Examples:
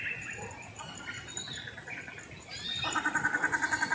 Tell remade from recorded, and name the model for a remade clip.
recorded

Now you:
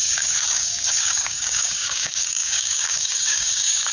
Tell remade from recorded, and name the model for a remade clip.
remade, codec, DAC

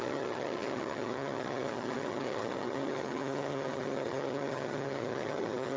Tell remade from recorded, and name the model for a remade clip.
remade, vocoder, HiFi-GAN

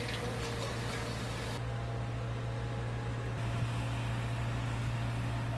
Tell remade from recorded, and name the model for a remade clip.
recorded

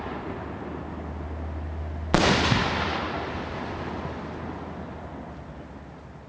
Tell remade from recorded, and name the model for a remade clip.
recorded